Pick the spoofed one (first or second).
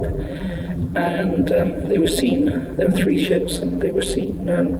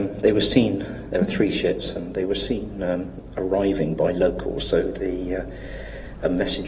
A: first